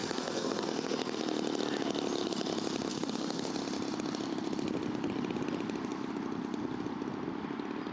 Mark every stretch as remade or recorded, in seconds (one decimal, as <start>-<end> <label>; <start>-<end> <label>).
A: 0.0-1.2 remade; 1.2-2.9 recorded; 2.9-3.5 remade; 3.5-7.9 recorded